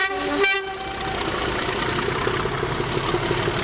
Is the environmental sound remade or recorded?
recorded